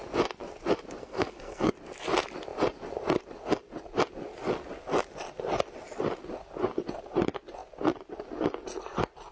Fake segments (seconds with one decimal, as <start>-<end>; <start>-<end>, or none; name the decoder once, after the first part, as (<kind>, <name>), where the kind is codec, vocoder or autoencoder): 1.0-1.7 (codec, SNAC)